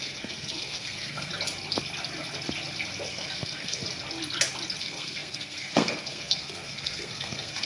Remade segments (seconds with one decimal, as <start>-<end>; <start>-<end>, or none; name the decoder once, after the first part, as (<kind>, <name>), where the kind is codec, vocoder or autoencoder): 0.0-1.3 (codec, SNAC); 3.1-3.8; 4.8-7.7